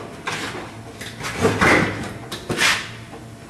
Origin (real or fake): real